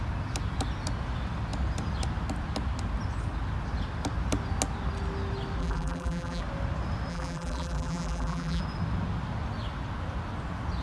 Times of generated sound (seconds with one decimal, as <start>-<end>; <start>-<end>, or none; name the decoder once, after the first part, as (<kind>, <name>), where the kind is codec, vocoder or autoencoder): 5.6-6.4 (vocoder, BigVGAN v2); 7.1-8.6